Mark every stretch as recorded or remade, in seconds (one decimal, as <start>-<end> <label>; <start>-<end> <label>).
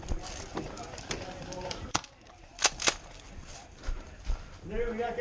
0.0-5.2 remade